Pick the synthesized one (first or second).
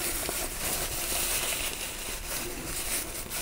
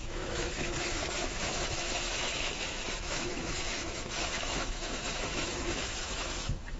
second